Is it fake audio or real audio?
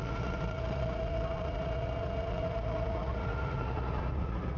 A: fake